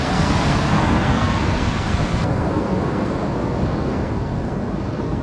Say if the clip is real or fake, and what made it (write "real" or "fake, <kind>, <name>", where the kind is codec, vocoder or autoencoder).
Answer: fake, codec, SNAC